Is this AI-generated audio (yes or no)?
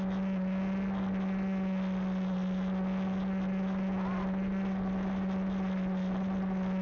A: no